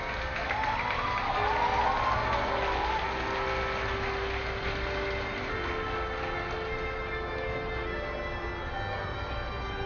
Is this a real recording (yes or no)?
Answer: yes